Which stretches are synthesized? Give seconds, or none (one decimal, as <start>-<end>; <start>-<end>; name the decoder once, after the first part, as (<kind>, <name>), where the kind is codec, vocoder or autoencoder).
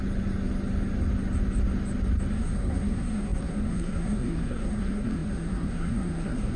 2.3-6.6 (codec, SNAC)